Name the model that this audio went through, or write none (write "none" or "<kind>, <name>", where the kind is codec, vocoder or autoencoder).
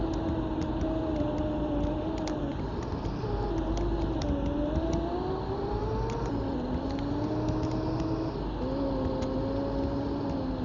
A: none